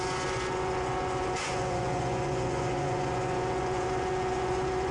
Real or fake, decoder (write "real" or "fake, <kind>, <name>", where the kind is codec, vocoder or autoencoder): fake, vocoder, Vocos